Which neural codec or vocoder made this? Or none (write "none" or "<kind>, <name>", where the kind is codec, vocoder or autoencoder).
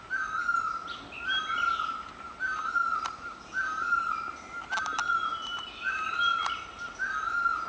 none